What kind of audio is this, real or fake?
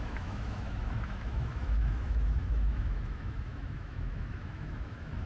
fake